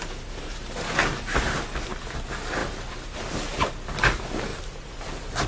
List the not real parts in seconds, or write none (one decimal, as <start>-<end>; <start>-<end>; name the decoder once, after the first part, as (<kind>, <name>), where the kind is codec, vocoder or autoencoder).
1.0-2.2 (vocoder, BigVGAN v2); 2.6-3.2; 4.5-5.5